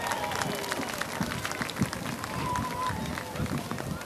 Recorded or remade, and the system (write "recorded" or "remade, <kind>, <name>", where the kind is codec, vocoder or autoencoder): recorded